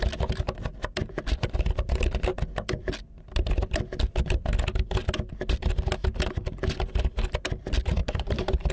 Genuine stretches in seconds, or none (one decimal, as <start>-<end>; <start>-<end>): 0.0-8.0